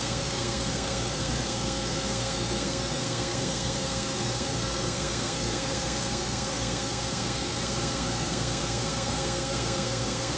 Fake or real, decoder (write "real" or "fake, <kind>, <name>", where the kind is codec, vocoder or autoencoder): fake, codec, SNAC